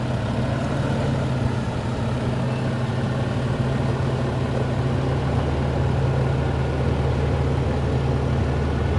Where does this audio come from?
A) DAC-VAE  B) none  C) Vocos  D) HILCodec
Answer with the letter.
B